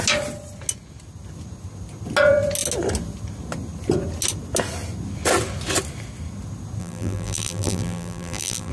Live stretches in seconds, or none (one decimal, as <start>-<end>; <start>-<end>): 0.0-6.8